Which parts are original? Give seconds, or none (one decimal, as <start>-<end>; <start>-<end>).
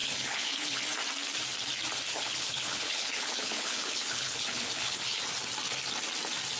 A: 0.8-2.1; 5.2-6.6